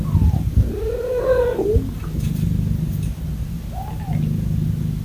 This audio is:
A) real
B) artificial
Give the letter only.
A